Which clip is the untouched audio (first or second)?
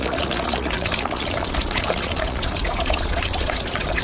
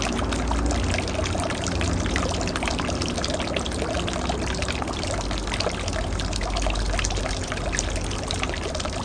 second